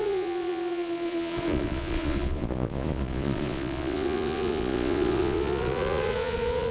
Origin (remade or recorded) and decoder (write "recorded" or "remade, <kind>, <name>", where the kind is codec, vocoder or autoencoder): remade, vocoder, Vocos